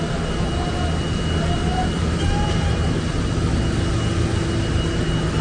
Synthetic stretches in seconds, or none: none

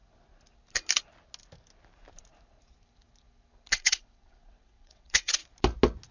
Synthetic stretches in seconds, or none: 3.7-5.4 (vocoder, WaveNeXt)

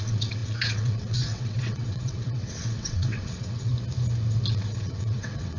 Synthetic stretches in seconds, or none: 0.0-3.7 (vocoder, WaveNeXt); 4.5-5.6